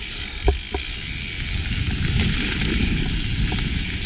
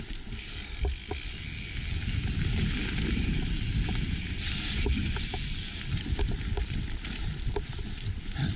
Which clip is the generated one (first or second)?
second